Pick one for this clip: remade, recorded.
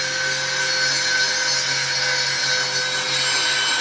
recorded